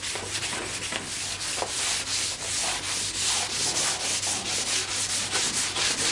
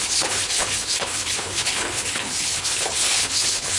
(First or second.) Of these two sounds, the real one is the first